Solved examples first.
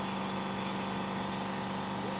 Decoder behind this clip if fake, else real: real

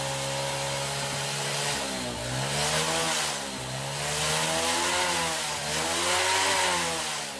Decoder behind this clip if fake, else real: real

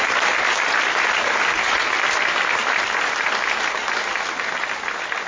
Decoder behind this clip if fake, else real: real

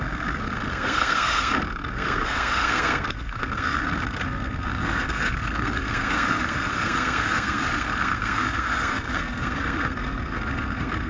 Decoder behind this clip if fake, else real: fake, codec, SNAC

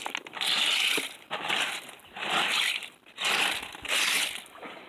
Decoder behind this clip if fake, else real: real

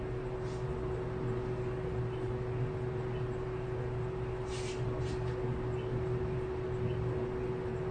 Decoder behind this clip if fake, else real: real